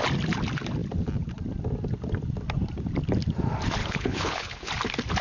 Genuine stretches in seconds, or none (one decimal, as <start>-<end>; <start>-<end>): 0.0-3.8; 4.7-5.2